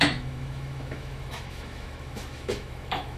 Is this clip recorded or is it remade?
remade